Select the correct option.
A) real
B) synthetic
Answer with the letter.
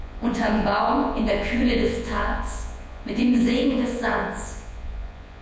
B